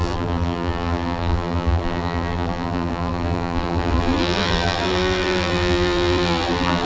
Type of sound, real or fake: fake